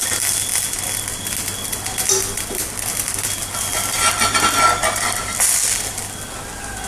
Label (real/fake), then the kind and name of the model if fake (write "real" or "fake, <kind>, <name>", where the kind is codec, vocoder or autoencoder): real